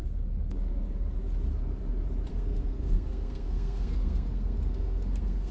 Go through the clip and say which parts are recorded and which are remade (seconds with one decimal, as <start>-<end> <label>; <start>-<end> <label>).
0.0-2.3 recorded; 2.3-5.5 remade

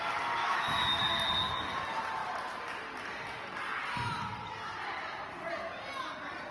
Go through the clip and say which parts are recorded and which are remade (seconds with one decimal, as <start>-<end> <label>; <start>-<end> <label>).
0.0-0.4 recorded; 0.4-1.0 remade; 1.0-6.5 recorded

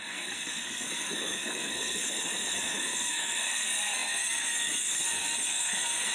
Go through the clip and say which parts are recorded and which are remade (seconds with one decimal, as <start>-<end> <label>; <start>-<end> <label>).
0.0-6.1 remade

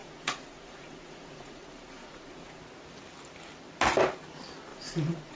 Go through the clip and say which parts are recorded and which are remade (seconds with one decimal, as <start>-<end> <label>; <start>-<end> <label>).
0.0-2.6 remade; 2.6-4.7 recorded; 4.7-5.4 remade

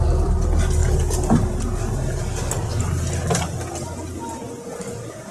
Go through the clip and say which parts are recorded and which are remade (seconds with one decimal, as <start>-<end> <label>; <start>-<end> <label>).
0.0-5.3 recorded

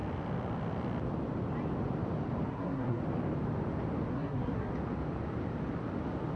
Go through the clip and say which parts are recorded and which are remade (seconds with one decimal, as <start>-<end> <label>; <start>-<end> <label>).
0.0-2.5 recorded; 2.5-3.0 remade; 3.0-4.1 recorded; 4.1-4.7 remade; 4.7-6.4 recorded

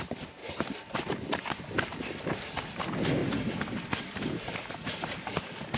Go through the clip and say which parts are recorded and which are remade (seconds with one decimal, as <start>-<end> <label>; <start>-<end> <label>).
0.0-0.4 recorded; 0.4-1.1 remade; 1.1-3.2 recorded; 3.2-5.3 remade; 5.3-5.8 recorded

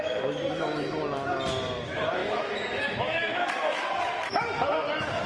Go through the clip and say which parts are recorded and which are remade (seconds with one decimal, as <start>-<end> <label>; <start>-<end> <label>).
0.0-1.0 remade; 1.0-1.8 recorded; 1.8-5.3 remade